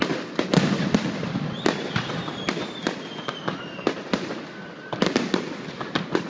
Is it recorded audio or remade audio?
recorded